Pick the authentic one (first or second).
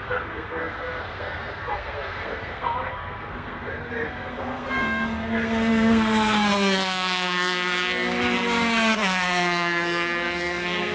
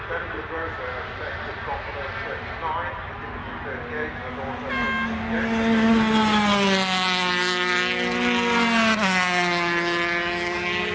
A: second